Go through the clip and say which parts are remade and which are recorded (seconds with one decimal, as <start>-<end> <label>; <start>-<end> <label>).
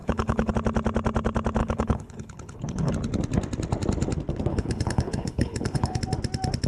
0.0-0.5 remade; 0.5-1.6 recorded; 1.6-2.9 remade; 2.9-4.5 recorded; 4.5-6.0 remade; 6.0-6.7 recorded